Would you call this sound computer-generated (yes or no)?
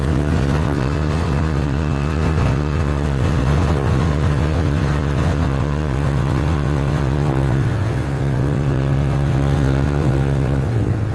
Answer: yes